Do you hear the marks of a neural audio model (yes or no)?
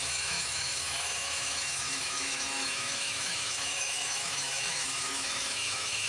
yes